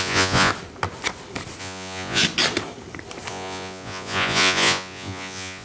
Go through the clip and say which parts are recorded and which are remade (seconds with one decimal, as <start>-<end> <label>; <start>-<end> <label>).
0.0-0.5 remade; 0.5-1.6 recorded; 1.6-2.2 remade; 2.2-3.3 recorded; 3.3-5.6 remade

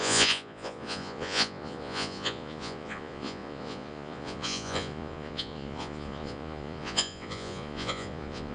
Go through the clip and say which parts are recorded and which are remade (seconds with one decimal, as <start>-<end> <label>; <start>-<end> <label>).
0.0-8.5 remade

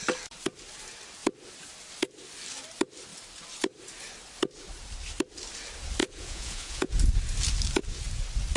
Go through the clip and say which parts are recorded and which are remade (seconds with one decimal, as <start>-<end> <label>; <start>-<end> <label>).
0.0-6.0 recorded; 6.0-6.9 remade; 6.9-8.6 recorded

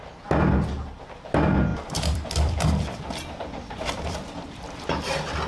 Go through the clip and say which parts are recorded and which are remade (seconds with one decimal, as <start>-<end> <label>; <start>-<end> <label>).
0.0-1.7 recorded; 1.7-5.0 remade; 5.0-5.5 recorded

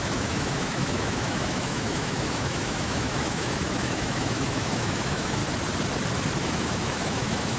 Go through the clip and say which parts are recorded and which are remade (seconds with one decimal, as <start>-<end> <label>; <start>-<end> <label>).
0.0-5.4 remade; 5.4-6.4 recorded; 6.4-7.6 remade

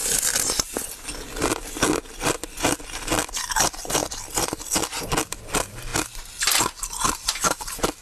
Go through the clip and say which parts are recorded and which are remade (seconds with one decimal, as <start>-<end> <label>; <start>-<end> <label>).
0.0-8.0 recorded

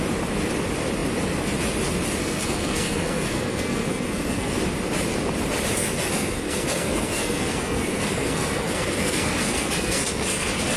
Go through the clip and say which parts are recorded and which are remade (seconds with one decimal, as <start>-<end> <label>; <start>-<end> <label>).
0.0-2.2 recorded; 2.2-4.6 remade; 4.6-5.8 recorded; 5.8-10.8 remade

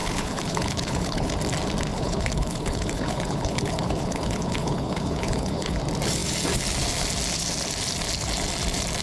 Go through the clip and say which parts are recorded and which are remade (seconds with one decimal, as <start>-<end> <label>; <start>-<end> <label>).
0.0-1.3 remade; 1.3-1.9 recorded; 1.9-5.8 remade; 5.8-9.0 recorded